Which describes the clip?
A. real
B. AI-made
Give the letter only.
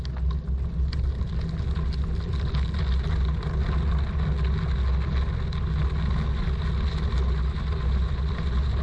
A